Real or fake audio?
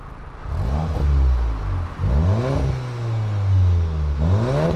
real